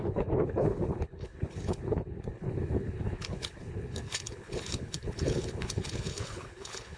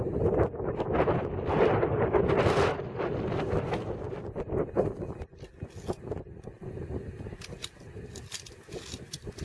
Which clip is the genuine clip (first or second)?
second